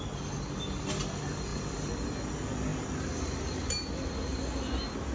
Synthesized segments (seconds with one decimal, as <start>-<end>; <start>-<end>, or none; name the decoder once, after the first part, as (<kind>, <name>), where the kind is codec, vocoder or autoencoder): none